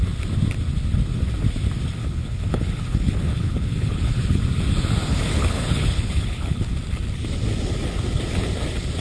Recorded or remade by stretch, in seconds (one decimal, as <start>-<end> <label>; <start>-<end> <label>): 0.0-2.0 recorded; 2.0-4.4 remade; 4.4-5.1 recorded; 5.1-6.7 remade; 6.7-9.0 recorded